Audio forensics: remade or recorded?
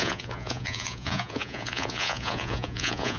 remade